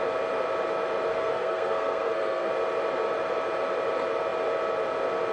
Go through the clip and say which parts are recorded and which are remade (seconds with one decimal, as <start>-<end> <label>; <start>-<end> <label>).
0.0-1.1 recorded; 1.1-2.5 remade; 2.5-5.3 recorded